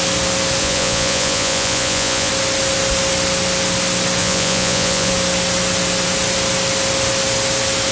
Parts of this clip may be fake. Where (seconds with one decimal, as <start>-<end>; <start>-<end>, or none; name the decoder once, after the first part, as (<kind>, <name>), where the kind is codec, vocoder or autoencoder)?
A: 0.6-2.3 (vocoder, Vocos); 4.2-5.1